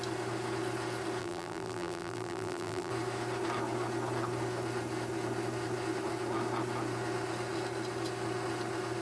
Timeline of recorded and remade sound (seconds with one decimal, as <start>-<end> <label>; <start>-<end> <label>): 0.0-1.2 recorded; 1.2-2.9 remade; 2.9-9.0 recorded